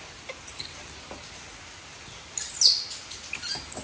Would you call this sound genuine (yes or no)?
yes